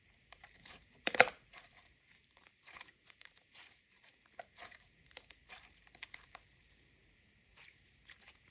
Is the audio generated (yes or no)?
yes